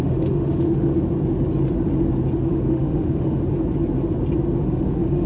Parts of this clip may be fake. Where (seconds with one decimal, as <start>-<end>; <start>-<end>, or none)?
0.0-0.9; 2.5-3.4; 4.6-5.3

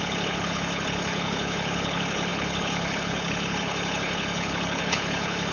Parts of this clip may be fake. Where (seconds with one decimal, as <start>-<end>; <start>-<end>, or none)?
0.0-5.5

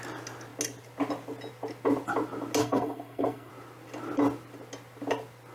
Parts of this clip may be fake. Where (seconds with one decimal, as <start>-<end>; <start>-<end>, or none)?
2.6-3.5

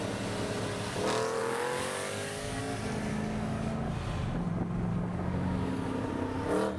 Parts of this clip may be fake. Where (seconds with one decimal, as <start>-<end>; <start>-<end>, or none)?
1.4-2.6; 3.1-3.9; 4.9-6.1

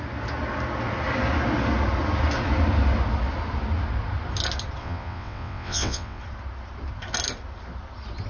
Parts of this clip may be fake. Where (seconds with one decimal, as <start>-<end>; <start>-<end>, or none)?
4.8-6.2

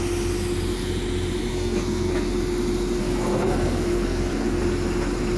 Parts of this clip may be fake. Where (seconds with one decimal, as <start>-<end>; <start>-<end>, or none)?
1.5-2.3; 3.0-4.6